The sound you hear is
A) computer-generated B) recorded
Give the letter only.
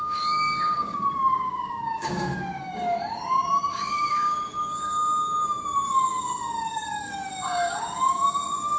A